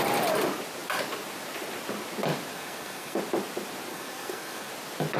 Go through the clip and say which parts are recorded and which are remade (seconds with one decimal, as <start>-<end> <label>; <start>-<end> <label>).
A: 0.0-2.5 recorded; 2.5-3.2 remade; 3.2-3.9 recorded; 3.9-4.7 remade; 4.7-5.2 recorded

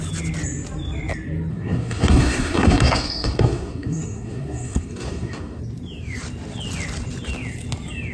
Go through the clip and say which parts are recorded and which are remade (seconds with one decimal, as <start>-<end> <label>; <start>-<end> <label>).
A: 0.0-1.5 recorded; 1.5-5.6 remade; 5.6-8.1 recorded

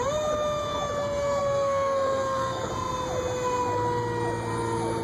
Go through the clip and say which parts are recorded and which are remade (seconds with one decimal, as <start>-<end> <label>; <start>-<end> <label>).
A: 0.0-1.4 recorded; 1.4-2.7 remade; 2.7-5.0 recorded

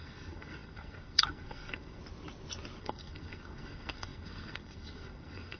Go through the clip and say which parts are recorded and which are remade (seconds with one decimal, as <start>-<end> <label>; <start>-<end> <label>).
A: 0.0-2.0 remade; 2.0-2.8 recorded; 2.8-5.6 remade

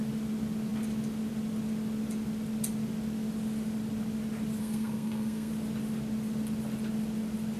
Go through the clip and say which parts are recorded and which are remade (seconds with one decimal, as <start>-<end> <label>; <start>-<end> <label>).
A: 0.0-4.6 recorded; 4.6-5.5 remade; 5.5-7.6 recorded

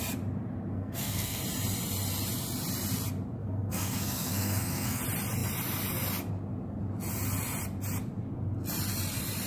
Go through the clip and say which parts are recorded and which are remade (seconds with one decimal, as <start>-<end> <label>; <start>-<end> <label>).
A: 0.0-0.7 recorded; 0.7-1.4 remade; 1.4-3.4 recorded; 3.4-5.0 remade; 5.0-9.5 recorded

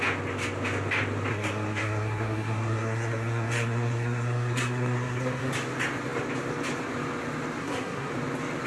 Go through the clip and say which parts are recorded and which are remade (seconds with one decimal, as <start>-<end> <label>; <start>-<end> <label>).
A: 0.0-1.3 recorded; 1.3-5.5 remade; 5.5-7.6 recorded; 7.6-8.1 remade; 8.1-8.7 recorded

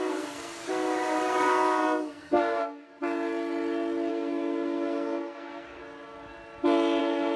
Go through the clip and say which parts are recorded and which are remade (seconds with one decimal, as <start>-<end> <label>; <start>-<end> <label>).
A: 0.0-2.9 remade; 2.9-4.1 recorded; 4.1-5.8 remade; 5.8-7.0 recorded; 7.0-7.4 remade